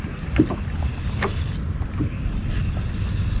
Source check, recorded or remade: recorded